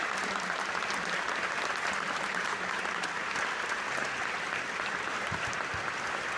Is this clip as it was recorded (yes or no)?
yes